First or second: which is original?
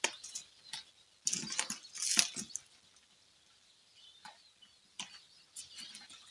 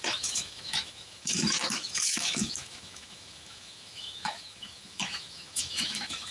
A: first